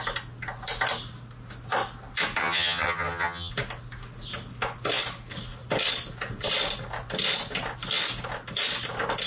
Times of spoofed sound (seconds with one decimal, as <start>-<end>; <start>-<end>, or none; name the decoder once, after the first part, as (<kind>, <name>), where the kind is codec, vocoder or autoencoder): 2.4-3.5 (vocoder, HiFi-GAN)